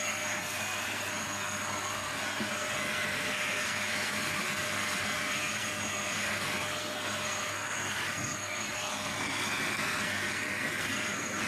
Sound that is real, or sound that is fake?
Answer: fake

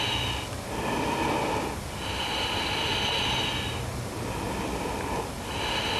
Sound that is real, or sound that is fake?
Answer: real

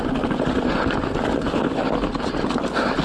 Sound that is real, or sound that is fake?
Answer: real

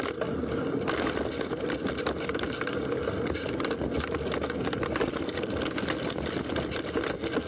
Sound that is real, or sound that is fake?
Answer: real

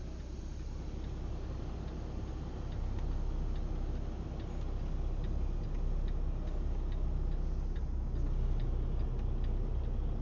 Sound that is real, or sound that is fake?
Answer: real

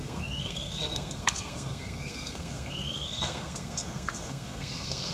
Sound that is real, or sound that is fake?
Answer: fake